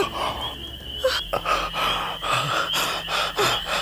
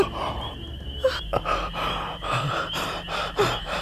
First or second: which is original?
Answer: first